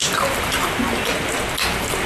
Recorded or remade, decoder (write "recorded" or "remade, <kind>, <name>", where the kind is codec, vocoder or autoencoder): recorded